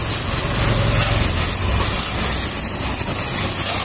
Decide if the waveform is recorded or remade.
recorded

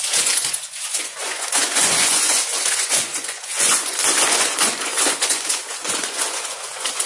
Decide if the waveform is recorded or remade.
remade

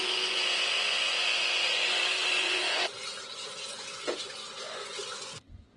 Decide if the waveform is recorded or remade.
remade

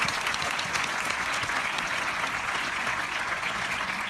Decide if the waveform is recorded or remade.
remade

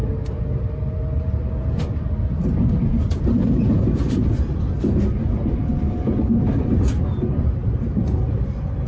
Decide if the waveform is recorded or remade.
recorded